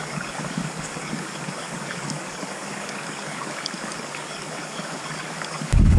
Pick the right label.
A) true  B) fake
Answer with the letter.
B